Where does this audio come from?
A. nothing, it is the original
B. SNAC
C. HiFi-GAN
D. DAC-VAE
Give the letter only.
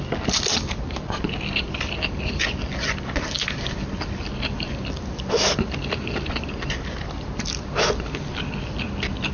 A